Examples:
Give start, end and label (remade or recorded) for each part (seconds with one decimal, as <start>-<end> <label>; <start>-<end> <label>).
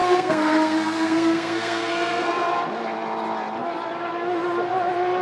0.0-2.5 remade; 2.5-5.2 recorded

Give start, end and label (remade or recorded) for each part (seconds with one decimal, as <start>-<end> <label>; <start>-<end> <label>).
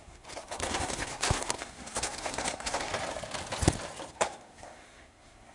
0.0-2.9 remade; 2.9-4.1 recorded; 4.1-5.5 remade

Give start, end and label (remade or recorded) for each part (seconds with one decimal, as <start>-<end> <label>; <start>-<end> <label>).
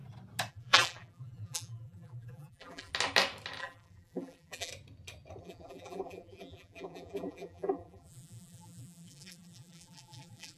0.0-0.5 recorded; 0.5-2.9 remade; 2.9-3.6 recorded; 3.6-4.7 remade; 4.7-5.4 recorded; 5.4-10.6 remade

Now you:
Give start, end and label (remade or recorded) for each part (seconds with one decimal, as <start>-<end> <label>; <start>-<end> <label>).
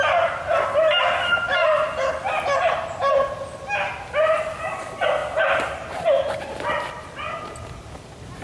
0.0-8.4 recorded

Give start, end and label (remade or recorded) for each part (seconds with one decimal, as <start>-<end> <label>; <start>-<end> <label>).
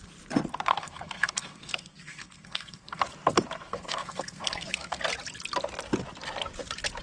0.0-0.7 recorded; 0.7-3.0 remade; 3.0-3.7 recorded; 3.7-5.0 remade; 5.0-7.0 recorded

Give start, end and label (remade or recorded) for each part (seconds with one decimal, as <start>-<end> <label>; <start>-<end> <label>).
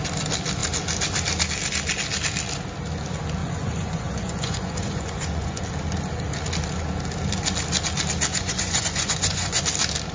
0.0-3.4 recorded; 3.4-5.6 remade; 5.6-8.3 recorded; 8.3-9.6 remade; 9.6-10.1 recorded